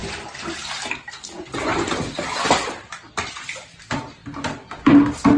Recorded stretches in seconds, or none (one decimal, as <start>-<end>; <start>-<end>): 0.0-5.4